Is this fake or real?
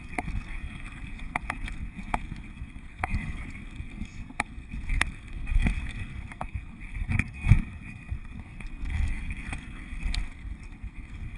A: fake